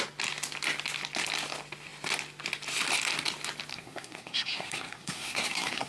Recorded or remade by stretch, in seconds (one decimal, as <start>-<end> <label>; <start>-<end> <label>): 0.0-3.7 recorded; 3.7-5.9 remade